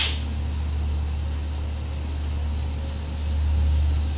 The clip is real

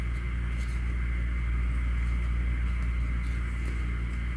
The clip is real